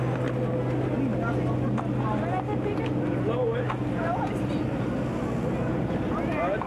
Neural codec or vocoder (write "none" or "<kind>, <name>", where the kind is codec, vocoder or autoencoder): none